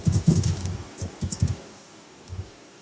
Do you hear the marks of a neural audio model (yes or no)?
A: yes